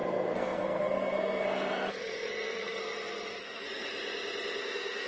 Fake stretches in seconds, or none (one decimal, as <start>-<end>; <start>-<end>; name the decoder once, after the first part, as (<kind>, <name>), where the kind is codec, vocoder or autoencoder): 0.0-2.8 (codec, SNAC); 3.4-3.9; 4.6-5.1

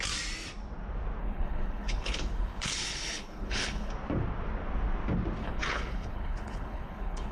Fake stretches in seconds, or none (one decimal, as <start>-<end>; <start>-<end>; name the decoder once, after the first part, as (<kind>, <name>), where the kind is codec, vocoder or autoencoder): 1.2-3.9 (codec, HILCodec); 5.4-7.3

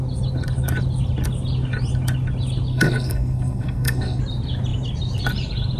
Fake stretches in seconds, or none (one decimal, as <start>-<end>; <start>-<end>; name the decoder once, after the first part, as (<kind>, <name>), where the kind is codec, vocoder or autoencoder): 2.7-4.2 (codec, SNAC)

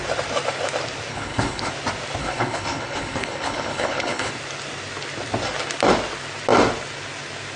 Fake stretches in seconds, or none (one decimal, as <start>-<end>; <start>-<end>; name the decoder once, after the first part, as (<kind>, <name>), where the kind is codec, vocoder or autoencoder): 1.1-1.7 (codec, HILCodec); 2.2-4.3

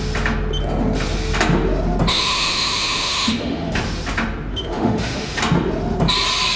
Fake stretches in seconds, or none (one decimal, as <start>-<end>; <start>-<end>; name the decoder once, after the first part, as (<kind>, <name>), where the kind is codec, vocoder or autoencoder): 2.1-3.8 (autoencoder, DAC-VAE); 4.5-5.4

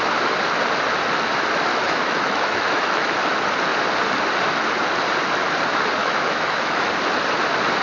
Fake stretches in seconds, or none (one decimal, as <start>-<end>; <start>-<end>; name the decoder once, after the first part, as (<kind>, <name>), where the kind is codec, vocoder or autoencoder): 1.7-3.2 (autoencoder, DAC-VAE); 6.0-6.9